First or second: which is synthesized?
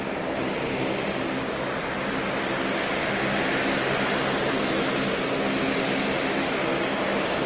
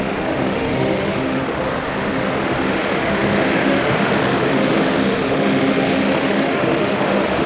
second